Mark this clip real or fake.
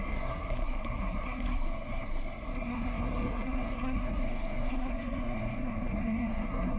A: fake